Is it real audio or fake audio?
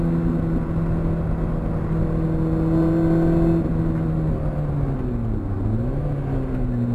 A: real